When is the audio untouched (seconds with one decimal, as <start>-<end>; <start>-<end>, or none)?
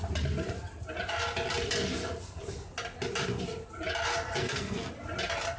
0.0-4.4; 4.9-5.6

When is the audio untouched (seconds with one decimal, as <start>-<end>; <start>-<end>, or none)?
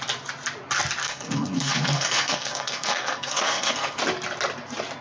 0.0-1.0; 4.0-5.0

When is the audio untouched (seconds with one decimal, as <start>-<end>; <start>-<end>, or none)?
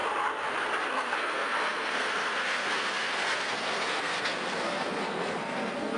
0.0-0.9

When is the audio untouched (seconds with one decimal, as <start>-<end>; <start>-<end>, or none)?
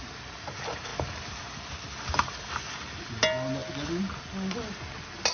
0.0-5.3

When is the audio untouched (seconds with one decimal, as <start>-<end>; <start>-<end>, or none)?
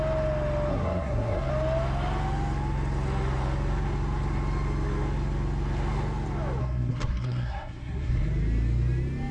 0.0-0.7; 1.5-6.6; 8.3-9.3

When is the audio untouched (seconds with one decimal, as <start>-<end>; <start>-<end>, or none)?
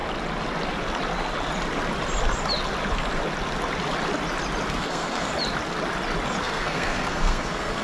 0.0-4.7; 5.3-6.4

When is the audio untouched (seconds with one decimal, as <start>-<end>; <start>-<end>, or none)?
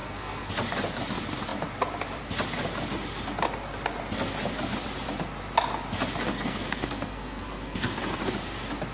0.5-6.3; 8.2-8.9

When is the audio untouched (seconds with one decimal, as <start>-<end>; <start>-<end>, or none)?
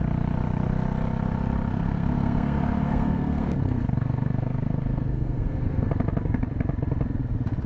0.0-1.7; 5.9-7.7